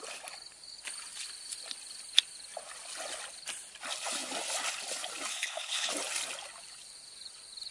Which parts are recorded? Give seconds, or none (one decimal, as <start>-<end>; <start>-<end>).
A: 0.0-5.3; 5.9-7.7